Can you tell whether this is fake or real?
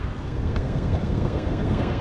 fake